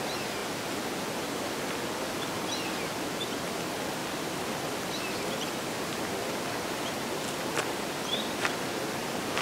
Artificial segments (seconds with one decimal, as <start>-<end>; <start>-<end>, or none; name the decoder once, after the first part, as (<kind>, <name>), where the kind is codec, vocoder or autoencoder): 4.0-8.7 (vocoder, BigVGAN v2)